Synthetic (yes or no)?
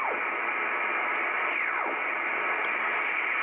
no